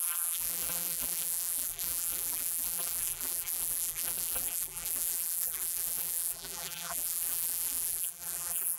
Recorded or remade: remade